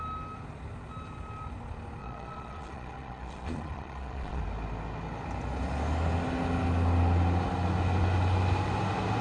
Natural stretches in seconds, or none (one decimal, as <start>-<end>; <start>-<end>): 0.0-2.0; 4.4-9.2